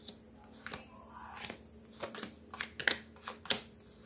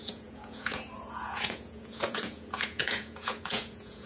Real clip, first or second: first